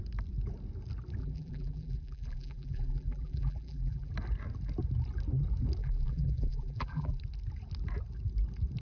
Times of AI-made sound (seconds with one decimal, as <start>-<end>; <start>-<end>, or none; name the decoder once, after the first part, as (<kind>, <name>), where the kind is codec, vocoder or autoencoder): 1.2-4.1 (vocoder, BigVGAN v2); 5.8-7.2